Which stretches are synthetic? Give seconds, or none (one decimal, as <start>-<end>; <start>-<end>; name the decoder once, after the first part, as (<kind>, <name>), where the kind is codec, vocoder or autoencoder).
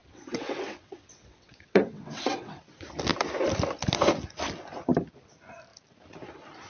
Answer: 0.0-2.6 (vocoder, WaveNeXt)